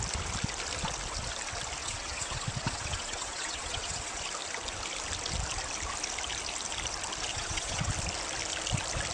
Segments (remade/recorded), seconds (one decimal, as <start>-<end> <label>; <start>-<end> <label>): 0.0-1.8 recorded; 1.8-4.2 remade; 4.2-7.3 recorded; 7.3-7.9 remade; 7.9-9.1 recorded